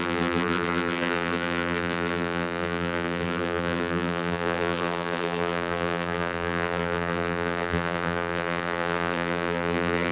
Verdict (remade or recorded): remade